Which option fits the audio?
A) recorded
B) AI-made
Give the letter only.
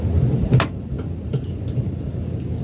A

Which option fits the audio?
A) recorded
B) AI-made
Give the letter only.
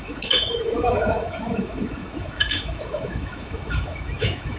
B